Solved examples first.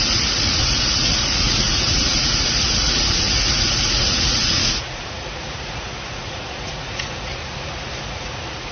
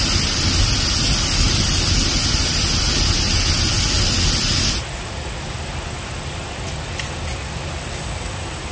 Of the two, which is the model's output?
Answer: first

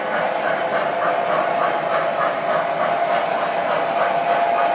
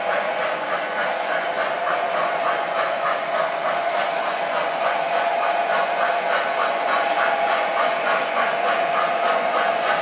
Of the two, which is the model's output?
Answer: second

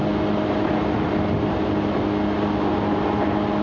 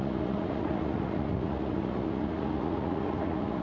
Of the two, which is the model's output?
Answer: second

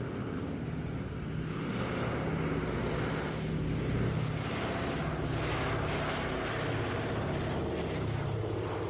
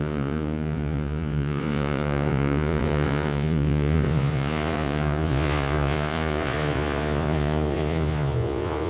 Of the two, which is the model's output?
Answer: second